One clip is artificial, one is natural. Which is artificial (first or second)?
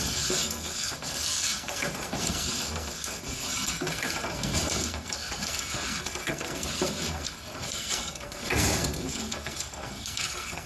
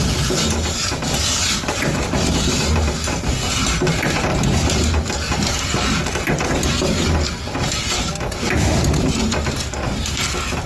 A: first